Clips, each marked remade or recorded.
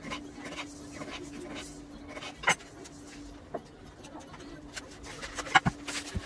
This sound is recorded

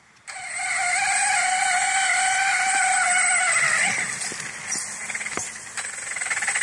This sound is recorded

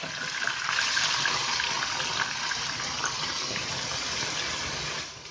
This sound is recorded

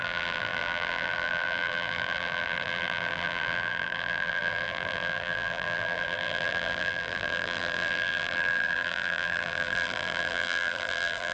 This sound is remade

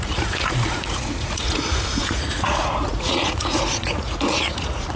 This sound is remade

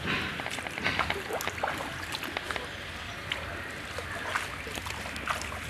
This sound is recorded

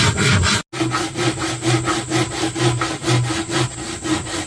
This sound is recorded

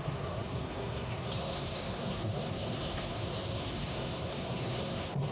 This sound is remade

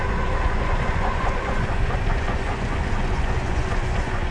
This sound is remade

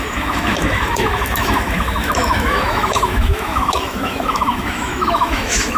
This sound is remade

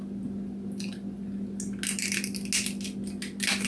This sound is recorded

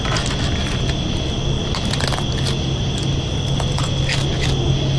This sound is recorded